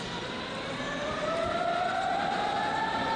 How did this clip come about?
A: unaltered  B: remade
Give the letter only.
A